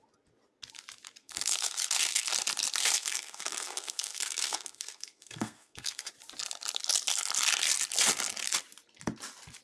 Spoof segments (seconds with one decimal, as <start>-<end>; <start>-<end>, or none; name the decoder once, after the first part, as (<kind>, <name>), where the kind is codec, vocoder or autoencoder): 1.2-2.3 (codec, SNAC); 2.8-6.1